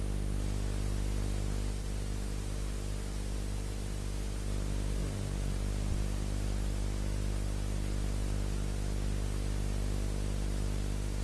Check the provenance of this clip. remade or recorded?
recorded